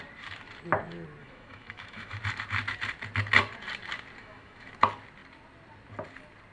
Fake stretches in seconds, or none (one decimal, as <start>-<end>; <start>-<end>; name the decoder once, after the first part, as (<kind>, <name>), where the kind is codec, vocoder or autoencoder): 1.2-2.2 (autoencoder, DAC-VAE); 4.2-4.7